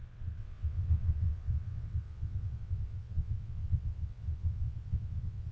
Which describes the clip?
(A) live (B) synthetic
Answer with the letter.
B